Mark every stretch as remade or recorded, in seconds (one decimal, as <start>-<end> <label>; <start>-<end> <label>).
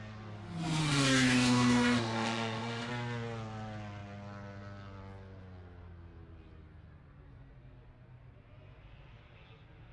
0.0-0.8 recorded; 0.8-2.9 remade; 2.9-9.9 recorded